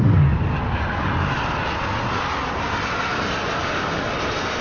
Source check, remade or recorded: recorded